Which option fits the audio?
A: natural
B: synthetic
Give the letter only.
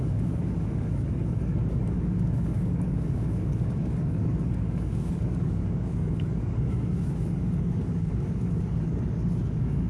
B